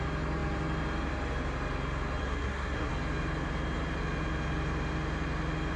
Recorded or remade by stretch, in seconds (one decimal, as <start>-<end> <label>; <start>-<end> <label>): 0.0-2.2 recorded; 2.2-2.9 remade; 2.9-5.8 recorded